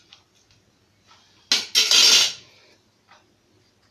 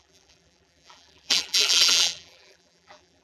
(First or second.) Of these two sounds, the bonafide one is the first